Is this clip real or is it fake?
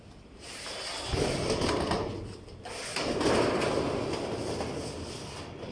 real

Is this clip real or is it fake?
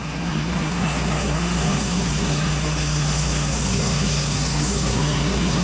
fake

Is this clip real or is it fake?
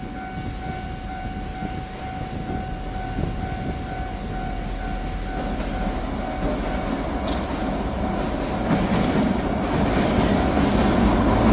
real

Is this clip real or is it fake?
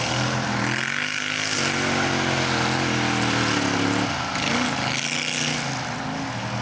real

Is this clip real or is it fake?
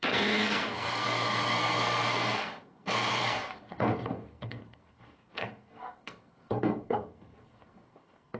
fake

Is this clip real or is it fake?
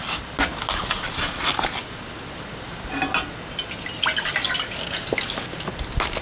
real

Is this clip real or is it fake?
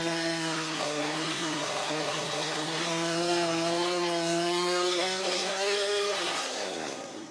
fake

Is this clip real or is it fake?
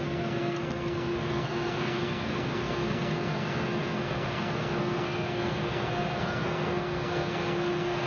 fake